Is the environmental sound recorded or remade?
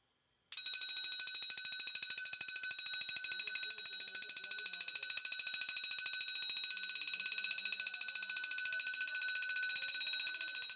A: recorded